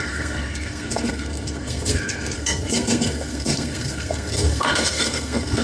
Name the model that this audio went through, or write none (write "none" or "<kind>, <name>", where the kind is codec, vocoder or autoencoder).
codec, SNAC